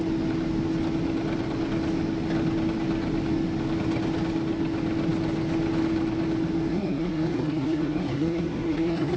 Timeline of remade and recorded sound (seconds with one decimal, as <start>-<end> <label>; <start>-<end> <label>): 0.0-6.7 recorded; 6.7-9.2 remade